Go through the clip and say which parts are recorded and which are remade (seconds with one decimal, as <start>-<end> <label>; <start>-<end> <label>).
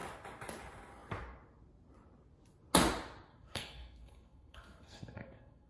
0.0-3.3 recorded; 3.3-5.7 remade